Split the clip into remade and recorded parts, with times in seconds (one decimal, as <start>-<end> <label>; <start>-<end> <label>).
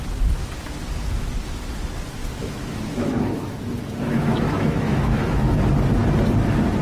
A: 0.0-2.3 recorded; 2.3-5.4 remade; 5.4-6.8 recorded